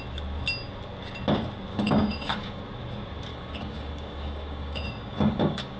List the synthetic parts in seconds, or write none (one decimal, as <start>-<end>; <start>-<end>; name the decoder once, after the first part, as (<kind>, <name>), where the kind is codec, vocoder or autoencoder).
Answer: 1.7-2.6 (codec, DAC); 3.3-5.8